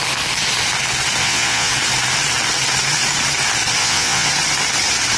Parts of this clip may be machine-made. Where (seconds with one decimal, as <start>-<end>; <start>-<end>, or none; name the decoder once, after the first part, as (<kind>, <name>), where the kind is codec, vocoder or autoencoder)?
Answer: 1.2-1.7 (vocoder, Vocos); 3.8-4.3